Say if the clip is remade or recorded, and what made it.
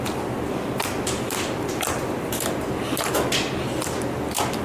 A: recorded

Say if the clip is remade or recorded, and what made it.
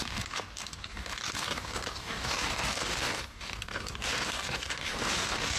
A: remade, codec, DAC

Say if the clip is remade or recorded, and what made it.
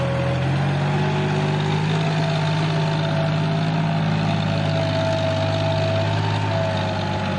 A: recorded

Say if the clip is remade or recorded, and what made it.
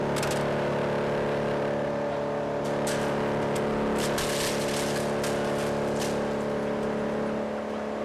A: recorded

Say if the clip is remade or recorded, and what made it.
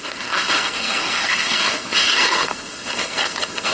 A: remade, codec, SNAC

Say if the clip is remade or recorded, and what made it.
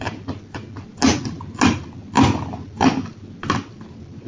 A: recorded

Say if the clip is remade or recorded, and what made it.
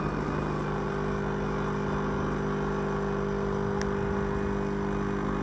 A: recorded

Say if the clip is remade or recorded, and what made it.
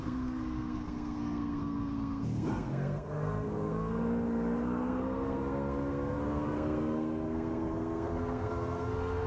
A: remade, codec, SNAC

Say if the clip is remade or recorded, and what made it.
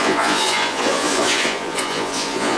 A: remade, vocoder, Vocos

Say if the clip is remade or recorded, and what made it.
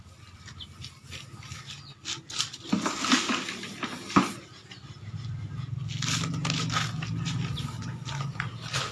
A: recorded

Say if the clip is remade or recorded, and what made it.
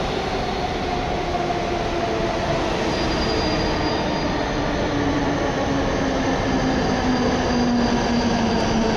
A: recorded